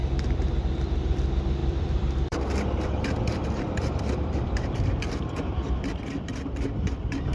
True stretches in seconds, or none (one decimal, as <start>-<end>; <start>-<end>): 0.0-0.6